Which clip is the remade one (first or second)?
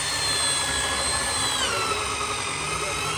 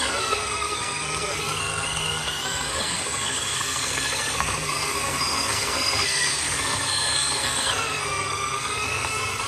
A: second